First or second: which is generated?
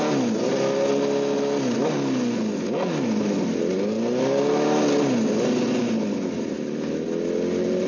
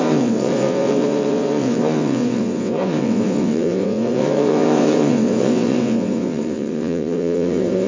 second